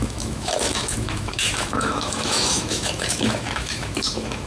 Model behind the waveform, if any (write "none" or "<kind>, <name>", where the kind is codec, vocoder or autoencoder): autoencoder, DAC-VAE